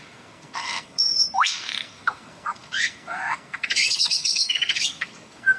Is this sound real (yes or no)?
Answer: no